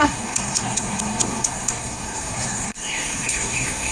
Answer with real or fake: fake